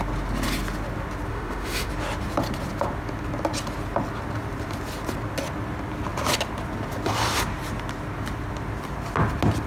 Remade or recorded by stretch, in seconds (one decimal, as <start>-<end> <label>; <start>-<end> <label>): 0.0-1.3 recorded; 1.3-1.9 remade; 1.9-9.7 recorded